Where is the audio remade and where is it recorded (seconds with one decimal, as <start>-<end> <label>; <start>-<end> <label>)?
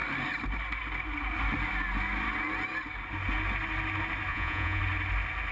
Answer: 0.0-4.3 recorded; 4.3-4.8 remade; 4.8-5.5 recorded